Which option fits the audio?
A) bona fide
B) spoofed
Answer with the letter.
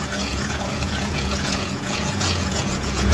B